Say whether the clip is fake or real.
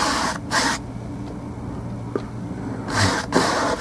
real